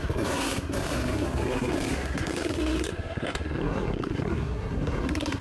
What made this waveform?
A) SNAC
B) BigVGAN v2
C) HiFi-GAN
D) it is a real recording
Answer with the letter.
A